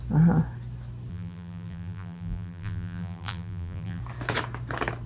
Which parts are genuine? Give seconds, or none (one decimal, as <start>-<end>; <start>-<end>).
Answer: 0.0-1.1; 4.0-5.1